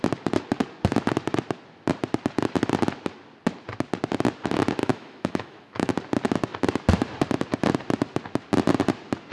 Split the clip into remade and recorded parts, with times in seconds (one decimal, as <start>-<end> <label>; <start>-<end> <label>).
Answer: 0.0-4.8 recorded; 4.8-5.9 remade; 5.9-9.3 recorded